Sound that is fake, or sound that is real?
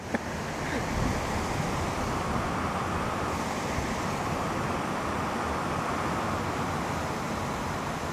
real